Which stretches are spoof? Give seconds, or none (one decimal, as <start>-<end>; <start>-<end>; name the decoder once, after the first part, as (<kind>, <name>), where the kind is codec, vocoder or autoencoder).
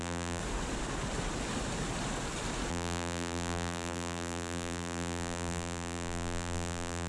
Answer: 0.0-0.4 (vocoder, BigVGAN v2); 2.7-7.1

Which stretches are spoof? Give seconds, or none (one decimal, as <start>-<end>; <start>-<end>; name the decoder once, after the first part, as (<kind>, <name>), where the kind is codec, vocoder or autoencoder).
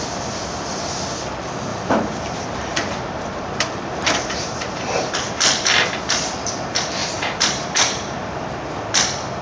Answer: 1.7-5.4 (vocoder, BigVGAN v2); 7.0-8.5